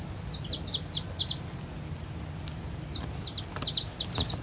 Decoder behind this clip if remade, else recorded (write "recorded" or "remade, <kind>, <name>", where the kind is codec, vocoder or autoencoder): recorded